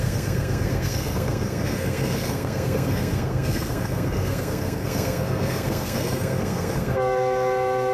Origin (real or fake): fake